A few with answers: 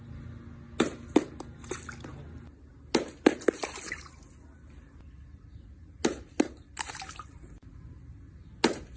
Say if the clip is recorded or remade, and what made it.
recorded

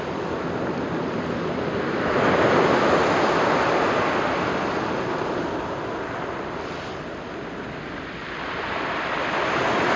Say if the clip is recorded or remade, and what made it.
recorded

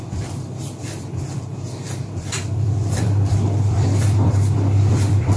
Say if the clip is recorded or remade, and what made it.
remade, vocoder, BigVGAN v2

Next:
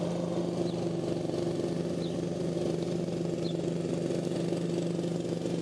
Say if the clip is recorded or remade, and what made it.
recorded